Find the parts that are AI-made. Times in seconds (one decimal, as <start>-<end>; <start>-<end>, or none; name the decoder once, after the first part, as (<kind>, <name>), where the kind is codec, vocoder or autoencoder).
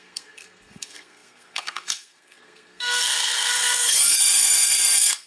0.0-5.3 (codec, SNAC)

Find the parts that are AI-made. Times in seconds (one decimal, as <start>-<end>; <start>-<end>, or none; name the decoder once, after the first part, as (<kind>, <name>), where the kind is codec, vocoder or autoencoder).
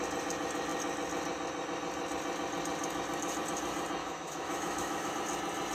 4.0-5.1 (autoencoder, DAC-VAE)